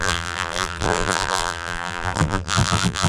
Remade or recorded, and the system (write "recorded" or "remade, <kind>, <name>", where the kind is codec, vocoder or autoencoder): remade, vocoder, BigVGAN v2